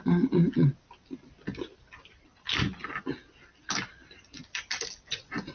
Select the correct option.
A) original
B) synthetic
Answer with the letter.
A